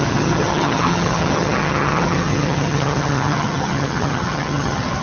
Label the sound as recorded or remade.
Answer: remade